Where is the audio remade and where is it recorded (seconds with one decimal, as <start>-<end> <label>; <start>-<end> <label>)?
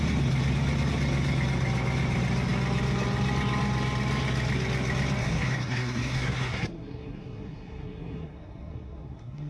0.0-5.2 recorded; 5.2-9.5 remade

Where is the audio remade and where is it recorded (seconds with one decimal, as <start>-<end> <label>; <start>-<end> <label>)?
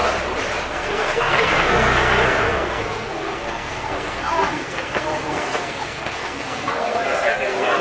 0.0-0.7 recorded; 0.7-7.8 remade